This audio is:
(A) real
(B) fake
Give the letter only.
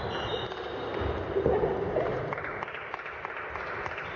A